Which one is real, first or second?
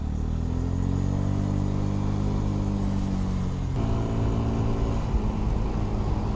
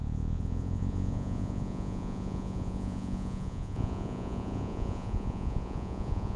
first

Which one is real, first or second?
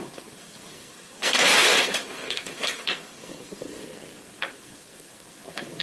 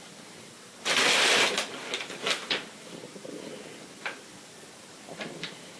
second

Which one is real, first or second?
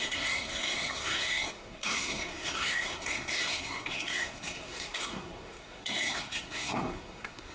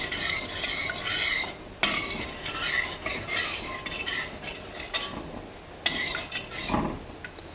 second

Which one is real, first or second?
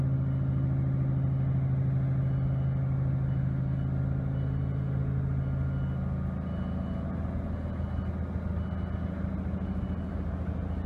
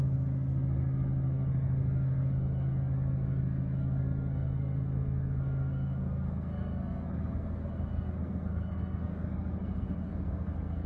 first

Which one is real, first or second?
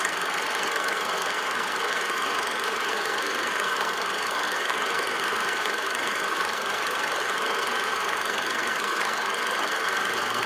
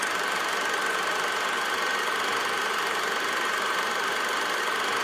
second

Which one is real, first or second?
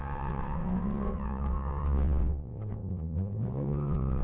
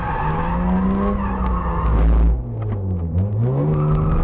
second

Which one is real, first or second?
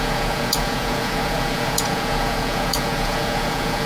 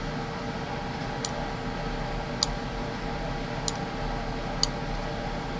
second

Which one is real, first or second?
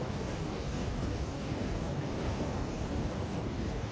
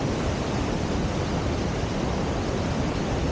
second